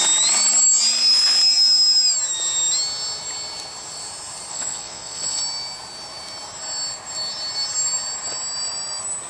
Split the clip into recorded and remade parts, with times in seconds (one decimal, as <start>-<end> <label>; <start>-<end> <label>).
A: 0.0-4.5 recorded; 4.5-5.4 remade; 5.4-9.3 recorded